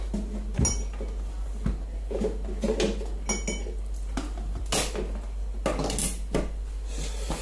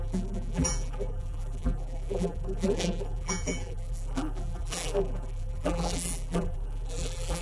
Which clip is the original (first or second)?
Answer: first